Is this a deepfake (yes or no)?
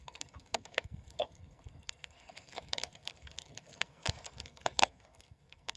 yes